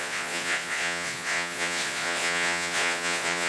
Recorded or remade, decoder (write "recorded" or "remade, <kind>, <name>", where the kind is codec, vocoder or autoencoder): remade, vocoder, Vocos